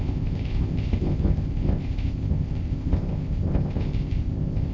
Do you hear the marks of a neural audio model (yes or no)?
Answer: yes